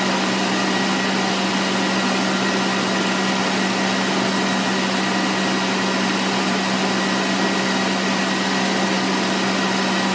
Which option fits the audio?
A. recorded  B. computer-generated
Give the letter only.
A